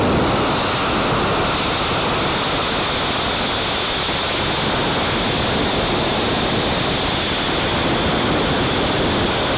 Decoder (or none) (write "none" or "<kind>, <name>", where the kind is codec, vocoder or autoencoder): none